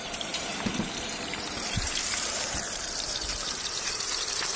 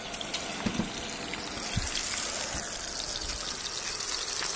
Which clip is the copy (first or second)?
first